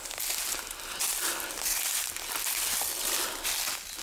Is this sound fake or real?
real